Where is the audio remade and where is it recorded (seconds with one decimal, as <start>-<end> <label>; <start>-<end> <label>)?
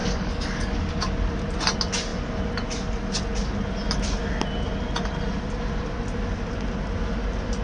0.0-0.9 remade; 0.9-7.6 recorded